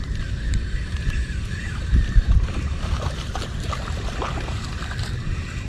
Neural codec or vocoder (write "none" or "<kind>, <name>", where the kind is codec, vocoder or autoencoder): vocoder, BigVGAN v2